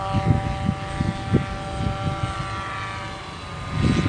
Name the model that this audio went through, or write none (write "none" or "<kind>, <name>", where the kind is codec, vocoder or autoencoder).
none